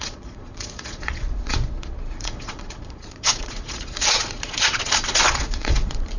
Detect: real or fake fake